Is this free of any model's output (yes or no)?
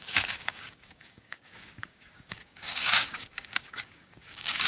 no